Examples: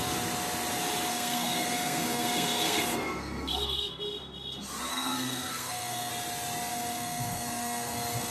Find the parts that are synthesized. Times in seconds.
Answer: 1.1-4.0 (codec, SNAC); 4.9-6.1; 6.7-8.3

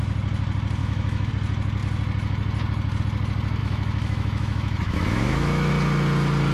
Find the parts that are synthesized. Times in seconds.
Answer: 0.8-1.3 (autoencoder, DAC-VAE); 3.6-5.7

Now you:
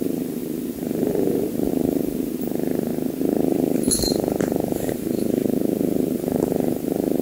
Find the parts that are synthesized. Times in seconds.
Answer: 0.0-2.9 (vocoder, BigVGAN v2); 3.5-7.2

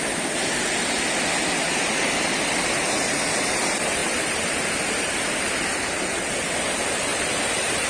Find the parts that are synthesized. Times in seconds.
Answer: 7.1-7.9 (vocoder, BigVGAN v2)

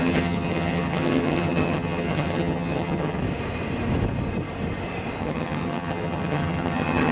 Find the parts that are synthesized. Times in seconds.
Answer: 0.0-3.2 (vocoder, HiFi-GAN); 5.2-7.1

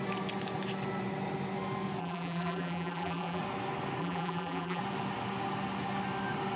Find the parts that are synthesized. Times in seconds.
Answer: 2.0-3.4 (vocoder, BigVGAN v2); 4.0-4.8